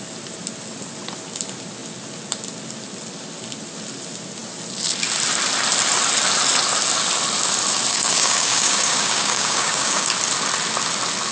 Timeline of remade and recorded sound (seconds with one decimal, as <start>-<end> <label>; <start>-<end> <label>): 0.0-7.9 recorded; 7.9-10.1 remade; 10.1-11.3 recorded